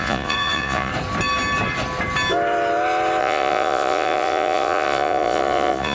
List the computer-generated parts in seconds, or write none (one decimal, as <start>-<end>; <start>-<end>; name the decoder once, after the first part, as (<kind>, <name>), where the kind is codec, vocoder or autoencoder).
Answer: 0.0-0.9 (vocoder, Vocos); 3.2-5.9